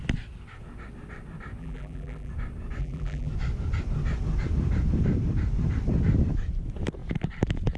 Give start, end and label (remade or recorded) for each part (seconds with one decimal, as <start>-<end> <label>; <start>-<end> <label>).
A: 0.0-1.6 recorded; 1.6-2.3 remade; 2.3-2.8 recorded; 2.8-3.3 remade; 3.3-7.8 recorded